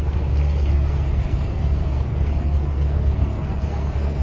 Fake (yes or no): yes